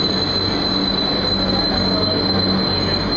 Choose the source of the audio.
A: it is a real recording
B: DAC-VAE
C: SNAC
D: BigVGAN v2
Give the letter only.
A